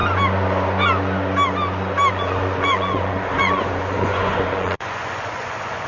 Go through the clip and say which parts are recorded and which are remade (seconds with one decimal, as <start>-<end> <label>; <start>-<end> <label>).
0.0-2.1 recorded; 2.1-5.9 remade